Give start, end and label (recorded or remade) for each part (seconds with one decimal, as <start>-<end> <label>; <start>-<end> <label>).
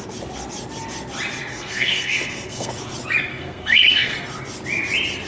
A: 0.0-1.5 recorded; 1.5-2.7 remade; 2.7-3.3 recorded; 3.3-4.1 remade; 4.1-5.3 recorded